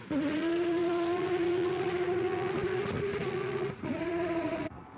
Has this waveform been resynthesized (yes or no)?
yes